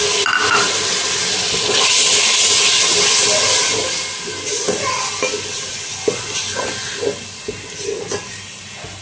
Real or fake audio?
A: real